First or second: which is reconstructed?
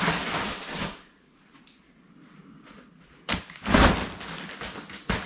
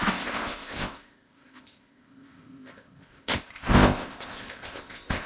second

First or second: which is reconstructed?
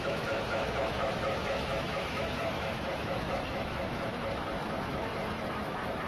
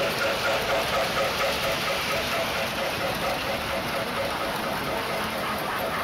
first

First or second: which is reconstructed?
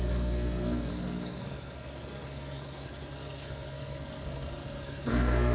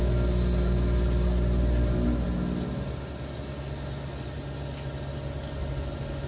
first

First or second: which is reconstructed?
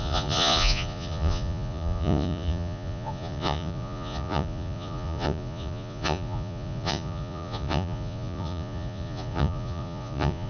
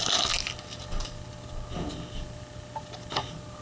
first